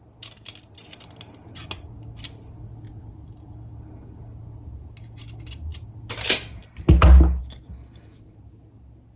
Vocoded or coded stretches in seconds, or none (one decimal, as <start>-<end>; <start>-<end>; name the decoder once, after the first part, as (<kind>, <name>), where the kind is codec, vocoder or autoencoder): none